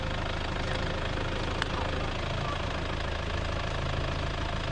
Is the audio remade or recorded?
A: recorded